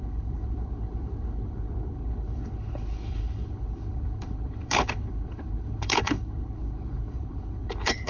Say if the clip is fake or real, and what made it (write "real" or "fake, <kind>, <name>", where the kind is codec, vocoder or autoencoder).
fake, codec, HILCodec